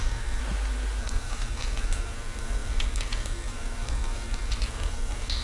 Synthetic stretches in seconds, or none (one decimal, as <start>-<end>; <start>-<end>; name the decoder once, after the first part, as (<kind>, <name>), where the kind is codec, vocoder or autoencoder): 0.0-0.4 (codec, SNAC); 1.0-5.4